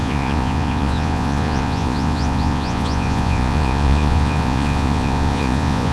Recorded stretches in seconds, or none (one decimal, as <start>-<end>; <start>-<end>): none